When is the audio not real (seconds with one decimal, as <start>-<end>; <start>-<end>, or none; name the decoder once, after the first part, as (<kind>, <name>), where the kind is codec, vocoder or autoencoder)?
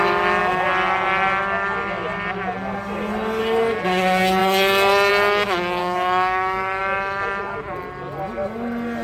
5.8-6.8 (codec, DAC)